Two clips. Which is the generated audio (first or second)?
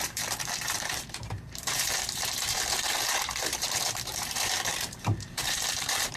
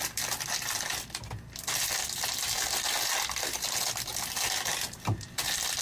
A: first